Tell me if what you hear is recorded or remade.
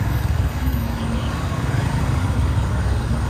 remade